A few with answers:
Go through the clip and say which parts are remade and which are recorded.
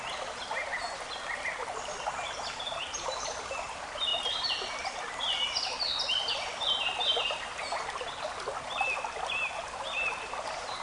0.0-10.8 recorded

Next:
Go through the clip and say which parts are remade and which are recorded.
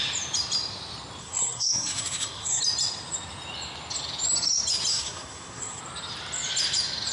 0.0-1.2 recorded; 1.2-2.6 remade; 2.6-4.9 recorded; 4.9-5.8 remade; 5.8-7.1 recorded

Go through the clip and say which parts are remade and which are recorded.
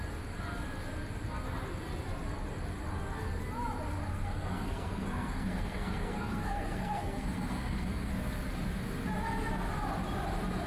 0.0-4.1 recorded; 4.1-8.1 remade; 8.1-10.7 recorded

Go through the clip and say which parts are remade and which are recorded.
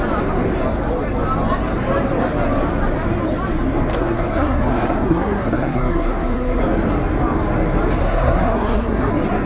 0.0-3.9 recorded; 3.9-6.6 remade; 6.6-8.0 recorded; 8.0-9.1 remade; 9.1-9.5 recorded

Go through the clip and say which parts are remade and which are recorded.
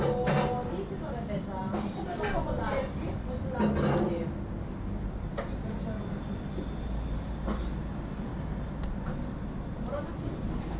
0.0-10.8 recorded